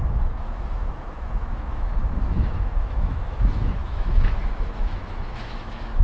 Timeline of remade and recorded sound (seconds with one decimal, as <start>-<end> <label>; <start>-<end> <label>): 0.0-6.0 remade